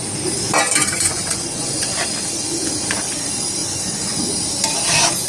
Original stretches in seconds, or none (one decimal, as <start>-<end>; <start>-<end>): 0.0-0.8; 1.9-3.6; 4.2-5.3